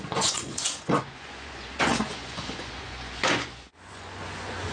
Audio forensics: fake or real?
fake